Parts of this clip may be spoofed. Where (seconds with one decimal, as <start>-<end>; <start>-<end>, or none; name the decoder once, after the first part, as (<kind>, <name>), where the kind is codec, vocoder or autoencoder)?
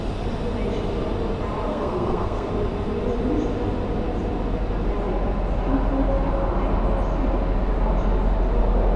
1.7-2.5 (codec, SNAC)